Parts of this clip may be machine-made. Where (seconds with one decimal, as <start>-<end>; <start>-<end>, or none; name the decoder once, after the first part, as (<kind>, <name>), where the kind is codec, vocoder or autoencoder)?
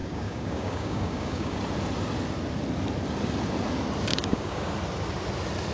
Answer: 0.0-1.6 (codec, DAC); 4.1-4.7